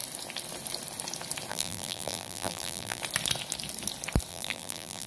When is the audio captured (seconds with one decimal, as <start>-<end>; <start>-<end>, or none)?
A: 0.0-1.5; 3.0-4.3